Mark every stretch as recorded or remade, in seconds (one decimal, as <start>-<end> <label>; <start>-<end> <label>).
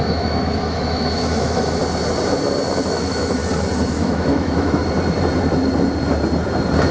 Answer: 0.0-1.8 remade; 1.8-2.9 recorded; 2.9-3.4 remade; 3.4-4.0 recorded; 4.0-4.8 remade; 4.8-6.9 recorded